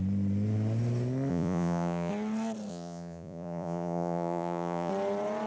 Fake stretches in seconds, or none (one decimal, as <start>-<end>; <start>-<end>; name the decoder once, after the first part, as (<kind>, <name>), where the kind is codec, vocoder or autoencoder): 1.3-2.1 (vocoder, Vocos); 2.7-4.9

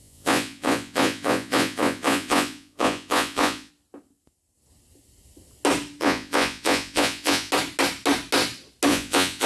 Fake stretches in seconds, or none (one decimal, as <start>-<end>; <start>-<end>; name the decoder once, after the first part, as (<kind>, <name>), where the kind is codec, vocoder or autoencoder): 0.0-3.7 (vocoder, Vocos); 6.0-7.5; 8.9-9.5

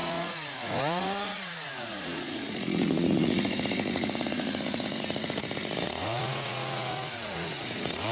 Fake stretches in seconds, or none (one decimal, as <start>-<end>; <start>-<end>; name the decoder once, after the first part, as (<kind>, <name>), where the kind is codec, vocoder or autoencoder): 0.0-8.1 (vocoder, Vocos)

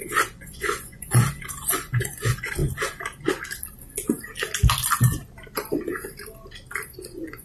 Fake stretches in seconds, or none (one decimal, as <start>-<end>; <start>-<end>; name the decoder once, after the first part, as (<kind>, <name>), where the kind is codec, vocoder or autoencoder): 0.0-2.6 (vocoder, Vocos); 7.0-7.4

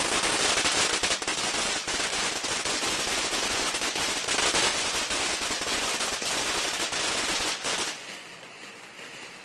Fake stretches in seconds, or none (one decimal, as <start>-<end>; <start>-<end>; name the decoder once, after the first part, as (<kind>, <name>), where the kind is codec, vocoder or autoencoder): 1.3-4.3 (vocoder, Vocos); 4.7-8.9

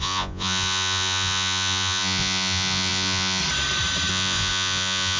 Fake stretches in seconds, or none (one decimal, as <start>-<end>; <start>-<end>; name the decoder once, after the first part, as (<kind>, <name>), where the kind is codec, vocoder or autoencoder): 0.0-3.4 (vocoder, Vocos); 4.1-5.2